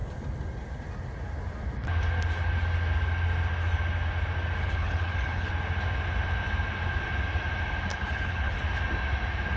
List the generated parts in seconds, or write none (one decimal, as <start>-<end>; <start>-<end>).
4.6-5.5; 7.9-8.6